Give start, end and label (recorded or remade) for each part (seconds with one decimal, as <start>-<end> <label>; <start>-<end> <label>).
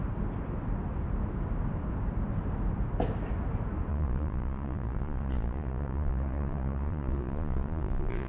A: 0.0-3.9 recorded; 3.9-8.3 remade